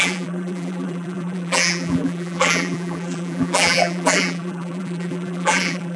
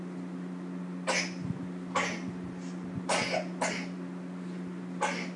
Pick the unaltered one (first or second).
second